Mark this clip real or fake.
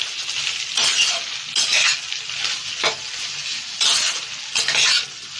real